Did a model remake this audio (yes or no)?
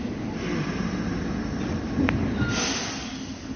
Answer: no